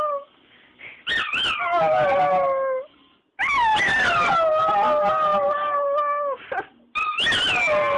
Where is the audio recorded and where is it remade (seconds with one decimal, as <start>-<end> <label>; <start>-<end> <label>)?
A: 0.0-8.0 recorded